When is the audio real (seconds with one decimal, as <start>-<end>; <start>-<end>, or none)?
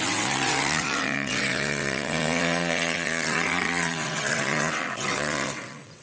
none